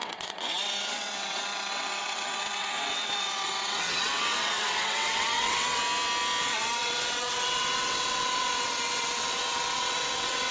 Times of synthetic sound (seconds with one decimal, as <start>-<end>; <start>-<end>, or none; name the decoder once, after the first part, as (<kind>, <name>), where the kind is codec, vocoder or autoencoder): 0.0-5.8 (vocoder, WaveNeXt); 6.4-10.5